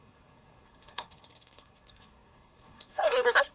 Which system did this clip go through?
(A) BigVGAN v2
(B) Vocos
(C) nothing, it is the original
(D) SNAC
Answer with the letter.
D